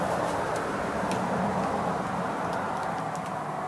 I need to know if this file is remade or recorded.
recorded